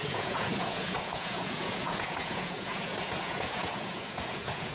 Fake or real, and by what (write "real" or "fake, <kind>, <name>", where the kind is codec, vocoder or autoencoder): fake, vocoder, Vocos